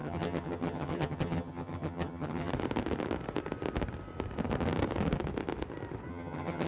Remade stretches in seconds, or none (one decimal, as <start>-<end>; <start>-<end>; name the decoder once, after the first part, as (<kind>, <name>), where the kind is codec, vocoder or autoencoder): 0.0-2.5 (vocoder, HiFi-GAN); 6.1-6.7